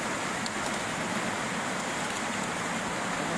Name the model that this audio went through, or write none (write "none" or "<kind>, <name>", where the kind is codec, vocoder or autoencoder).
none